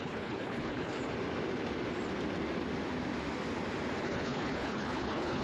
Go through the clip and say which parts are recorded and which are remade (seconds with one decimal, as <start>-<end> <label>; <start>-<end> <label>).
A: 0.0-1.0 remade; 1.0-4.0 recorded; 4.0-5.4 remade